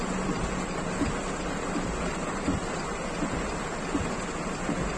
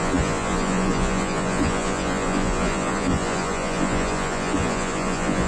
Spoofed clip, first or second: second